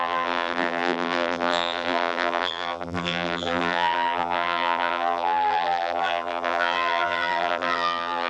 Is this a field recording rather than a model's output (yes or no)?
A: no